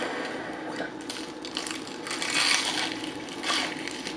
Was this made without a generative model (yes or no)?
yes